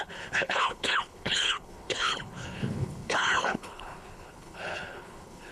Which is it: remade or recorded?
remade